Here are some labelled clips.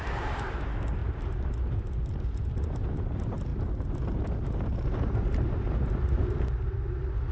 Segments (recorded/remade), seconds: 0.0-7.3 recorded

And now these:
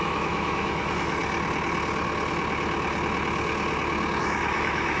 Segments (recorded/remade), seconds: 0.0-1.2 remade; 1.2-4.2 recorded; 4.2-5.0 remade

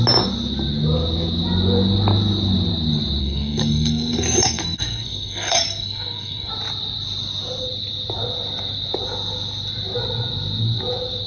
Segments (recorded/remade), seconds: 0.0-3.2 recorded; 3.2-6.5 remade; 6.5-11.3 recorded

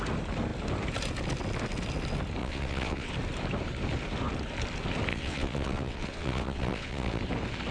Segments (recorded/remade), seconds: 0.0-2.4 recorded; 2.4-3.1 remade; 3.1-5.1 recorded; 5.1-7.2 remade; 7.2-7.7 recorded